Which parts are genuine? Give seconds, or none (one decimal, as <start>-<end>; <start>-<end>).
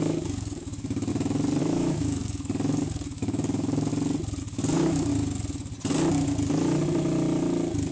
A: 1.1-1.6; 3.9-4.4; 5.1-7.9